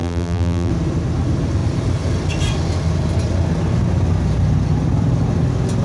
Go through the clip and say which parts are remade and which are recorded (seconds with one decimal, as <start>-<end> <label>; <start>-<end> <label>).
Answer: 0.0-0.7 remade; 0.7-5.8 recorded